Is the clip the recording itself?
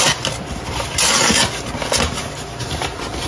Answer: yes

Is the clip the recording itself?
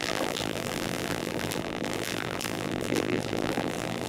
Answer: no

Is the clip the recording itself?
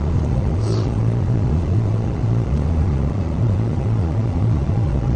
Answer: no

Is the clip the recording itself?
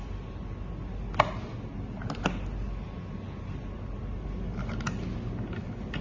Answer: yes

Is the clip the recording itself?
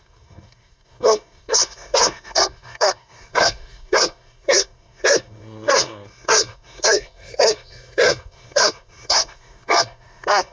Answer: no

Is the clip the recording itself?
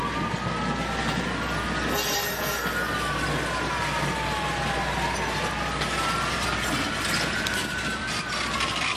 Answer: yes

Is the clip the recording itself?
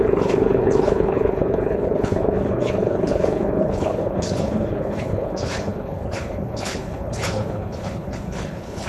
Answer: no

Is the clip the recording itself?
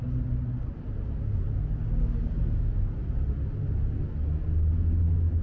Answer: yes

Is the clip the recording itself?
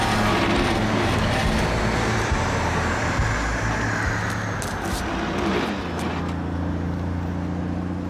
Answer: yes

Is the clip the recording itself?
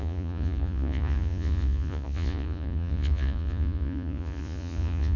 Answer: no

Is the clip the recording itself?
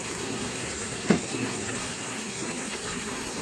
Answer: no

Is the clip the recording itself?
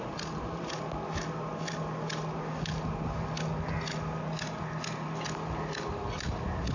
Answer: yes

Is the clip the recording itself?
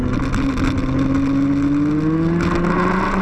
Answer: yes